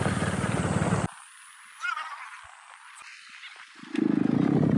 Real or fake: real